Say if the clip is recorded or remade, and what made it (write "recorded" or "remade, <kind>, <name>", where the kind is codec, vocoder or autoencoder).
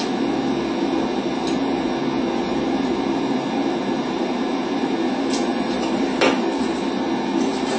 recorded